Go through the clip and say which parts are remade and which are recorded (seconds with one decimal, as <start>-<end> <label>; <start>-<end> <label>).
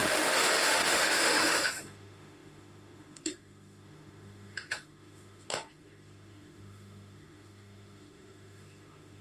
0.0-9.2 remade